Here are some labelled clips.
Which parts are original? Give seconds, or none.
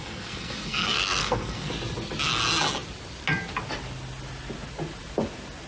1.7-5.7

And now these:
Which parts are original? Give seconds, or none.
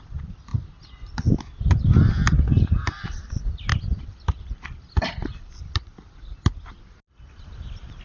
0.0-8.0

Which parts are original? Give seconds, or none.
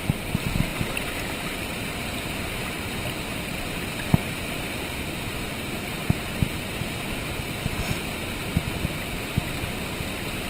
0.0-0.7; 1.8-10.5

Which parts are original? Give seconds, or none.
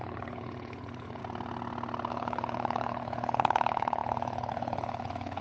1.2-2.1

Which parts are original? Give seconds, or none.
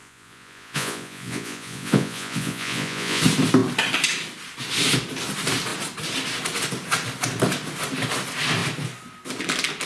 3.2-9.9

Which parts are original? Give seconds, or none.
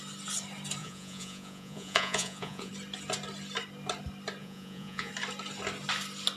0.0-0.8; 2.7-4.4; 5.1-6.4